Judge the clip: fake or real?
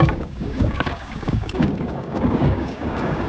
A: fake